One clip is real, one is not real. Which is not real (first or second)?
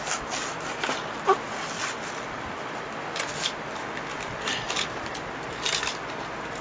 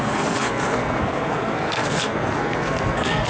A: second